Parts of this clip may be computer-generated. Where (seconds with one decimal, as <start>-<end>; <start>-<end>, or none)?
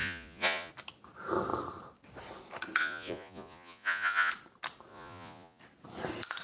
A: 0.0-0.7; 2.8-4.3; 4.9-5.6